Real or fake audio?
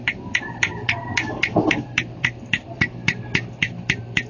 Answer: fake